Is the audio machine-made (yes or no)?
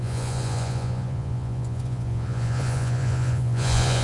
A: yes